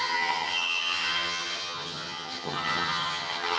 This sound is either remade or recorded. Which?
remade